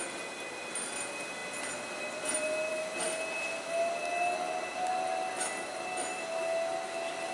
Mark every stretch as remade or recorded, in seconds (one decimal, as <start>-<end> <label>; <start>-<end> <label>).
0.0-7.3 recorded